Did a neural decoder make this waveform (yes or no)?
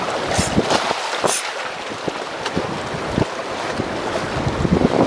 no